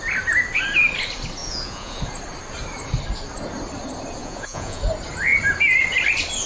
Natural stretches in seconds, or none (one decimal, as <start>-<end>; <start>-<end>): 0.0-1.4; 2.0-4.2; 4.8-6.5